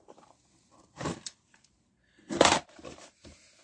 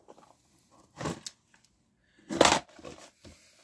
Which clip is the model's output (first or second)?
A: first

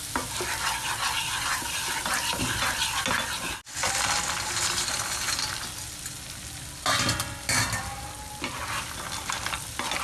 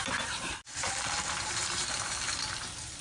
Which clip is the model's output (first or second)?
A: second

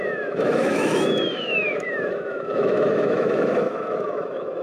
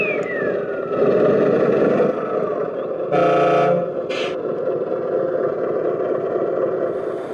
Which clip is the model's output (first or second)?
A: first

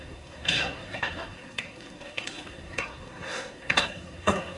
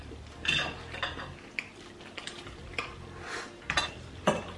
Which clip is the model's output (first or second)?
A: first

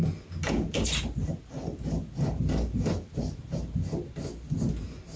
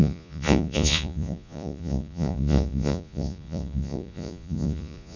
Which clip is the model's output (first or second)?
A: second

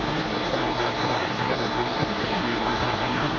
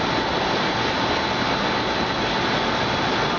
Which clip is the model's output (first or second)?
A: first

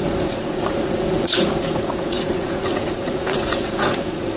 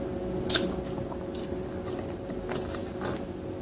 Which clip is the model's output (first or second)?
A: first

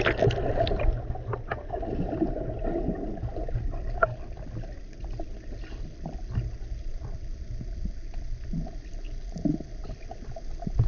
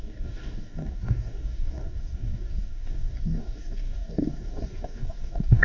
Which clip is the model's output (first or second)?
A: second